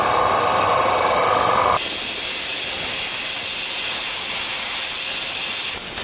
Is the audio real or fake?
real